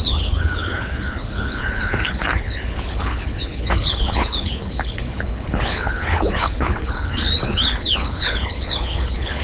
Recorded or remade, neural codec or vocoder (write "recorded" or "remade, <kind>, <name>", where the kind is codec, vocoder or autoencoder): remade, codec, HILCodec